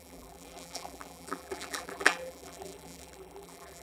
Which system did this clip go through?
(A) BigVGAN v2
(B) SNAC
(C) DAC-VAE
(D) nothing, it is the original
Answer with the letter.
A